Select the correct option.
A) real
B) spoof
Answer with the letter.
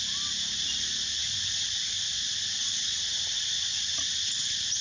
A